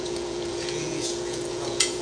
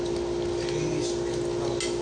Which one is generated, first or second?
first